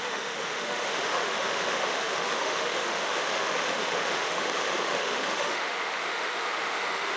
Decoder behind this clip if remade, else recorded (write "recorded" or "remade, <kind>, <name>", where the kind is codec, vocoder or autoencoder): remade, autoencoder, DAC-VAE